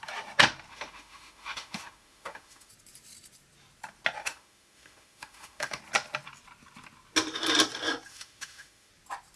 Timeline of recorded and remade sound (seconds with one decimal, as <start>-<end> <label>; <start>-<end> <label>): 0.0-0.7 recorded; 0.7-2.7 remade; 2.7-4.2 recorded; 4.2-5.8 remade; 5.8-8.1 recorded; 8.1-8.9 remade; 8.9-9.4 recorded